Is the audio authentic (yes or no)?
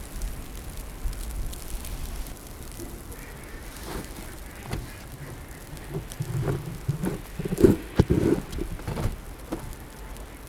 yes